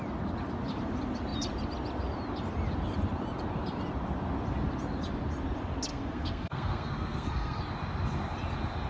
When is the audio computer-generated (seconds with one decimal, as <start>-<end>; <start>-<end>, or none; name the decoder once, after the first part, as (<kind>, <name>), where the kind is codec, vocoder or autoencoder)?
5.9-7.6 (codec, SNAC)